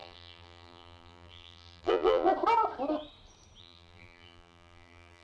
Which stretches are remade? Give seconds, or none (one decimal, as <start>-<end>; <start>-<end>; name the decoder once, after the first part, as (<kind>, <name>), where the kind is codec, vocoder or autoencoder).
0.0-2.3 (vocoder, BigVGAN v2); 3.6-5.2